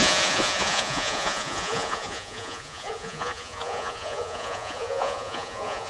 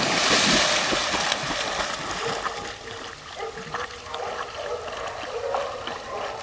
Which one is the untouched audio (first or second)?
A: second